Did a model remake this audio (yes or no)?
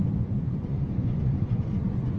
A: yes